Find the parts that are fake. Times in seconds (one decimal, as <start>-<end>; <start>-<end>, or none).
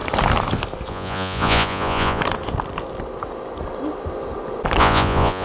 0.9-2.2; 4.8-5.4